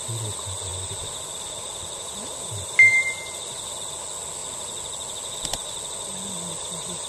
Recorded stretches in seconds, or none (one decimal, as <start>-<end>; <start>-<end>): 0.0-7.1